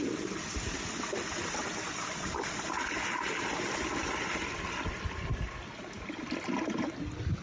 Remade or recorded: recorded